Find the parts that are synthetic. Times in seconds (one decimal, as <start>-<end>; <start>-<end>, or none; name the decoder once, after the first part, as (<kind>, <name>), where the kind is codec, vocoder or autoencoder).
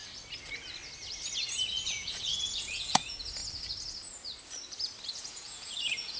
1.7-3.4 (vocoder, Vocos); 5.1-6.2